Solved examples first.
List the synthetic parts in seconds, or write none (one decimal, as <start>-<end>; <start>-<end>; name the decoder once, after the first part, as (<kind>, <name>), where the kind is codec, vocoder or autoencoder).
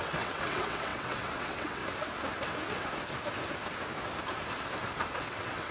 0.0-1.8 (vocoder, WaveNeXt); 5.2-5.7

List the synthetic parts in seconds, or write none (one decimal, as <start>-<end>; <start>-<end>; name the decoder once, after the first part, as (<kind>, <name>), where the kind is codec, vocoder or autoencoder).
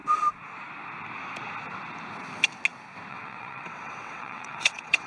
3.1-5.1 (vocoder, WaveNeXt)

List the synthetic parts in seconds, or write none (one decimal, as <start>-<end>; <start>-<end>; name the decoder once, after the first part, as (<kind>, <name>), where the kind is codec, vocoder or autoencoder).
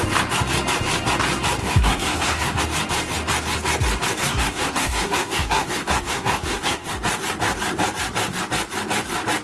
1.6-2.6 (codec, SNAC); 4.2-6.9